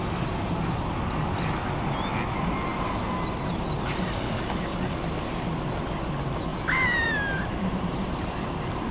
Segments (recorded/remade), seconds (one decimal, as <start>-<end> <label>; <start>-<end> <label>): 0.0-6.5 recorded; 6.5-8.9 remade